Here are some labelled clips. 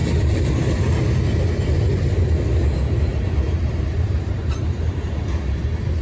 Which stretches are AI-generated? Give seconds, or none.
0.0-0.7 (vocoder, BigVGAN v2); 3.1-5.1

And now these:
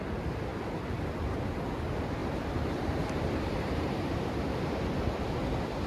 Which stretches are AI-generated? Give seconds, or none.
2.2-4.7 (vocoder, BigVGAN v2)

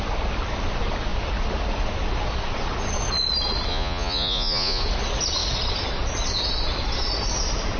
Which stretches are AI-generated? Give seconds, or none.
3.7-4.8 (vocoder, Vocos)

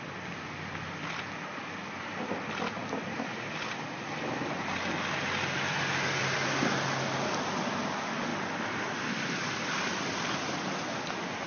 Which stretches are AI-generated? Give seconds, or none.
none

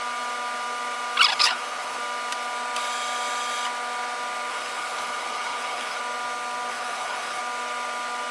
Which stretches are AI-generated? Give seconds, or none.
1.3-2.0 (codec, HILCodec); 4.5-6.0; 6.7-7.4

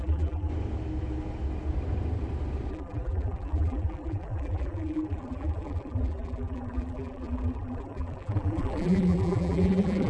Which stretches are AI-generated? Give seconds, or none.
0.0-0.5 (vocoder, BigVGAN v2); 2.7-10.1

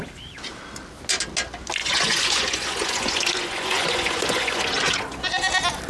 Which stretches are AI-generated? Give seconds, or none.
1.8-5.2 (vocoder, Vocos)

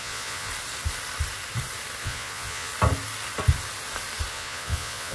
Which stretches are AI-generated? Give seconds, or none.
0.0-0.5 (vocoder, Vocos); 2.0-2.7; 4.3-5.1